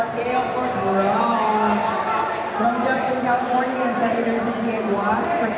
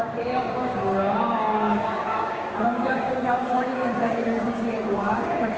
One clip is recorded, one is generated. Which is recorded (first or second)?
first